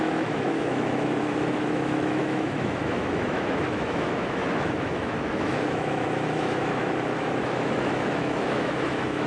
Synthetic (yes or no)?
yes